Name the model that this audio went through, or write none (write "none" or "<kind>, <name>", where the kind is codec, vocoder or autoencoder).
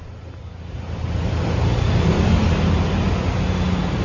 none